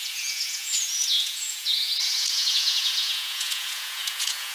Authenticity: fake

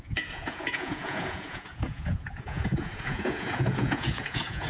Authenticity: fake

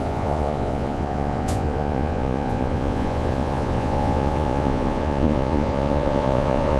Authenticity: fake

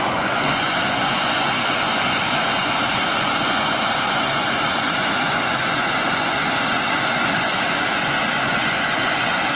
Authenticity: fake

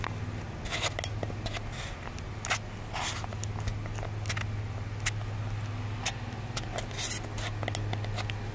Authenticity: real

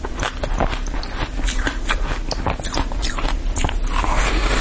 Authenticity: real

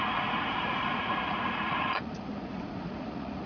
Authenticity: fake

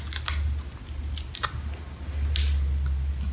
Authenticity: real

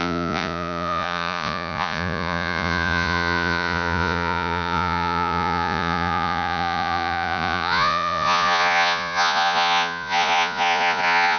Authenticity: fake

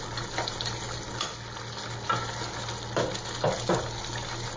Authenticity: real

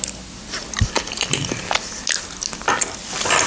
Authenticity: real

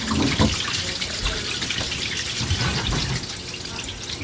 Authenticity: real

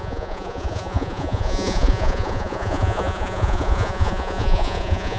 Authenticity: fake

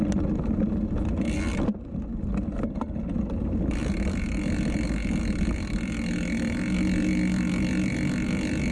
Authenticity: real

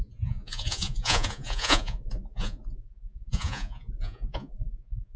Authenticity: fake